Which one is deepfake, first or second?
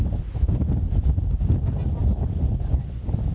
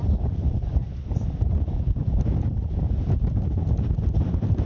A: second